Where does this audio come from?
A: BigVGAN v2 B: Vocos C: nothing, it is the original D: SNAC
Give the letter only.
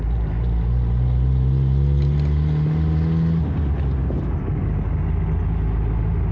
C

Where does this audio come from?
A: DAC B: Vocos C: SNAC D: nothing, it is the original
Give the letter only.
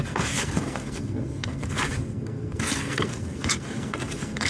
C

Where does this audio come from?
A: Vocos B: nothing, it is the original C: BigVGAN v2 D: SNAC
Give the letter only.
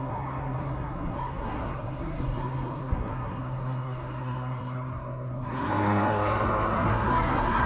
D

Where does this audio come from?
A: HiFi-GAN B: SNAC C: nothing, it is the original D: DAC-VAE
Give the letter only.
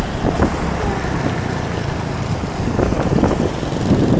C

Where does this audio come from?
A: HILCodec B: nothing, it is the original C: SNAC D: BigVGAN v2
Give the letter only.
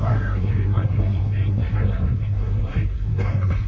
C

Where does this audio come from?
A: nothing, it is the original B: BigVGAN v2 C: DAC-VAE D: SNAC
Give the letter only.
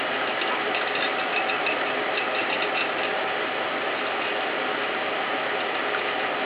A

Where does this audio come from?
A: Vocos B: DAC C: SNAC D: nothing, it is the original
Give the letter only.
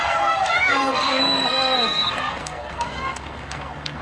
C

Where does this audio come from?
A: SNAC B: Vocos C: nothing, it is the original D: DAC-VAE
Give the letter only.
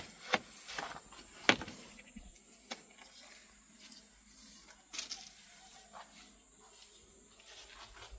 C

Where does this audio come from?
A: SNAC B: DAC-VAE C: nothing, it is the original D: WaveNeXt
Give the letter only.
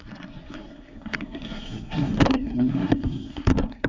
A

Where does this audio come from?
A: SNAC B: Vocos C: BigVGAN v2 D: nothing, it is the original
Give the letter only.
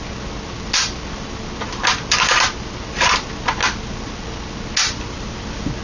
D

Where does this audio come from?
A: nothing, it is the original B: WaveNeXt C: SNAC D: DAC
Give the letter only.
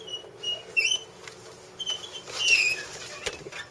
A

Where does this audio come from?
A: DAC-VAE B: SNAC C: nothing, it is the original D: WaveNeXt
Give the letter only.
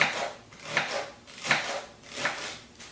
C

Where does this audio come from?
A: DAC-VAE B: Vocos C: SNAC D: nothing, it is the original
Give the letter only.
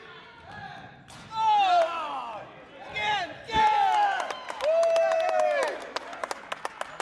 D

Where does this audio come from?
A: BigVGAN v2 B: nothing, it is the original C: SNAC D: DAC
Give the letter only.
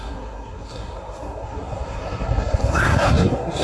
C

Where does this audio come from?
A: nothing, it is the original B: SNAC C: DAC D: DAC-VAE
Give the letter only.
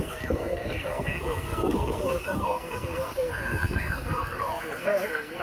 B